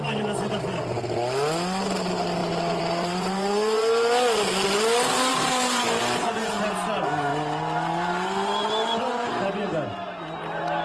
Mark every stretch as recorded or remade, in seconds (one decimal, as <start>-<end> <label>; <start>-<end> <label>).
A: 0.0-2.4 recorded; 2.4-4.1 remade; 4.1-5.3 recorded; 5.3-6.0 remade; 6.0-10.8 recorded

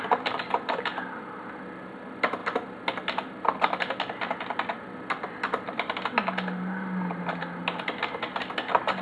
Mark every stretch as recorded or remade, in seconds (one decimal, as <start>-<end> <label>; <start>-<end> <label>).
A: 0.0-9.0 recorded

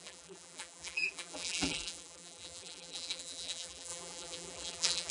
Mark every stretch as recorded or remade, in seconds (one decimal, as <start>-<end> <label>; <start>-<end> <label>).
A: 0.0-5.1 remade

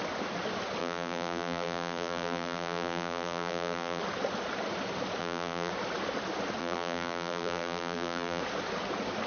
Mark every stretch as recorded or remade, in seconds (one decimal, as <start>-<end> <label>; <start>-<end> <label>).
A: 0.0-0.8 recorded; 0.8-4.0 remade; 4.0-5.2 recorded; 5.2-5.7 remade; 5.7-6.6 recorded; 6.6-8.4 remade; 8.4-9.3 recorded

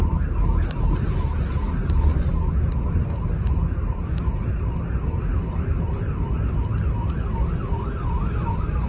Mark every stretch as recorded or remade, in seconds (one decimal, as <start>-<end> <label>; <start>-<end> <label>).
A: 0.0-8.9 recorded

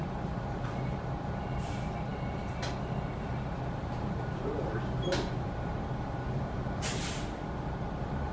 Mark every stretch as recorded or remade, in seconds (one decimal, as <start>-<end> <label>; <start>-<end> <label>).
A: 0.0-1.7 remade; 1.7-3.8 recorded; 3.8-7.0 remade; 7.0-8.3 recorded